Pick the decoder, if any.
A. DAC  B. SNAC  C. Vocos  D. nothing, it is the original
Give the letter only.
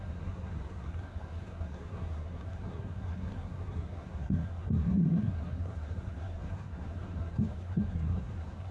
B